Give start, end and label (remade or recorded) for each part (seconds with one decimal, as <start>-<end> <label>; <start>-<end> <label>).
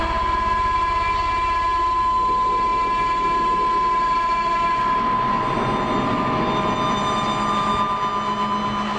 0.0-9.0 recorded